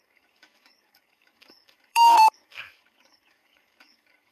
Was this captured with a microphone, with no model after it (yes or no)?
no